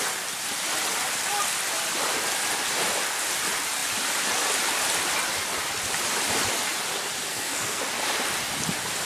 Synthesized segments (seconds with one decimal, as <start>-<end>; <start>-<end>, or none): 7.3-7.8